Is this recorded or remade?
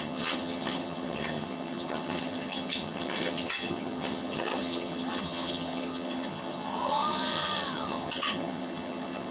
remade